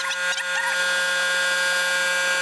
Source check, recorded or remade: recorded